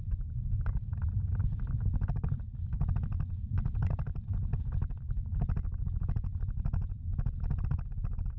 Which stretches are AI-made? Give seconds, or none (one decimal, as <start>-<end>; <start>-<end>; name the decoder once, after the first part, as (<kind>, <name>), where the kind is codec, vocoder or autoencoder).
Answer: none